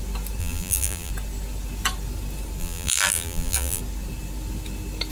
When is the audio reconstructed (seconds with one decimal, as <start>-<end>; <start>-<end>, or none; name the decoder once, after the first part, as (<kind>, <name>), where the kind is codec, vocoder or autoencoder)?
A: 0.4-1.1 (vocoder, BigVGAN v2); 2.6-3.8

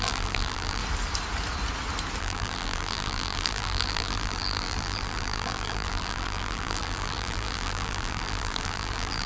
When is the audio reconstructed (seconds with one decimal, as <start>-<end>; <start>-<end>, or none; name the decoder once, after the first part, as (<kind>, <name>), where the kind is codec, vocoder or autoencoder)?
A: 0.0-0.8 (vocoder, BigVGAN v2); 2.2-9.3

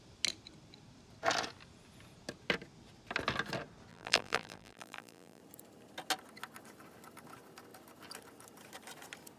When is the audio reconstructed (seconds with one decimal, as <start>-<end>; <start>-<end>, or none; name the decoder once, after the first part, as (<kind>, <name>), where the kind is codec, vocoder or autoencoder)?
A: 3.9-5.4 (vocoder, BigVGAN v2)

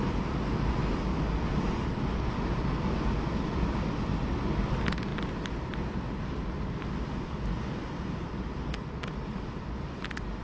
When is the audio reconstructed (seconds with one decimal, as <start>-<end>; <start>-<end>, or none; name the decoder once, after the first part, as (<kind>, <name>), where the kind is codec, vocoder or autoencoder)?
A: none

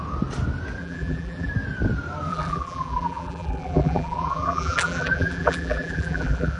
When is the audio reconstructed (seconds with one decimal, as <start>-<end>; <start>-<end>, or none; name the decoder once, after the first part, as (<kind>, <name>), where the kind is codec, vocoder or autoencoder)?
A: 0.8-1.5 (vocoder, BigVGAN v2); 2.3-6.6

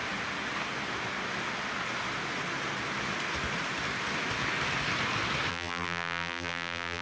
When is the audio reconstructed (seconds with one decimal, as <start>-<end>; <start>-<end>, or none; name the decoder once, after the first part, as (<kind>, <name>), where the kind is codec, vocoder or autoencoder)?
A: 5.5-7.0 (vocoder, BigVGAN v2)